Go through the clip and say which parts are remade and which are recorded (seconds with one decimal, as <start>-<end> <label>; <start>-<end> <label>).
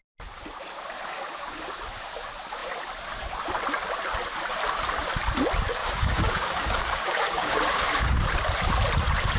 0.0-5.8 recorded; 5.8-8.2 remade; 8.2-9.4 recorded